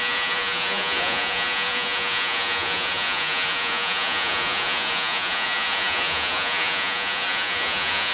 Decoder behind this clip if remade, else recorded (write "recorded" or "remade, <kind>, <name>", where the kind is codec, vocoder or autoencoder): remade, vocoder, Vocos